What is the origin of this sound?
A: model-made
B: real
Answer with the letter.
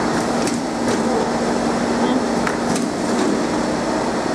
B